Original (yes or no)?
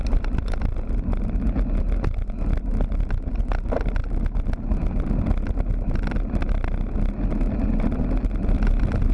yes